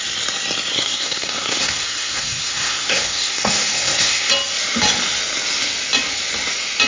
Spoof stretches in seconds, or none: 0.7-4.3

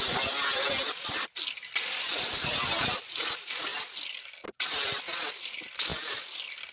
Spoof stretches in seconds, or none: none

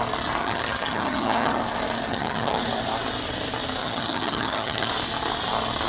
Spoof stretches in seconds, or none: 0.4-1.6; 2.1-2.6; 3.8-4.9

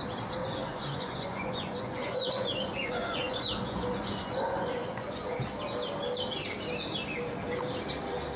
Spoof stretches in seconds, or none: 0.4-5.4

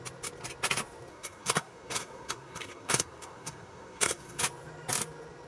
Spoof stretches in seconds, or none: 1.1-4.4

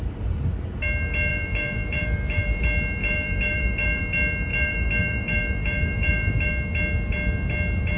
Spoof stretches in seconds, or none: 1.3-2.6; 3.0-4.0; 4.5-6.5